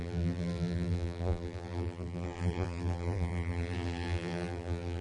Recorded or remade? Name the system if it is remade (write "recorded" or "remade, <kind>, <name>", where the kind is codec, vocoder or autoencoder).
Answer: remade, vocoder, BigVGAN v2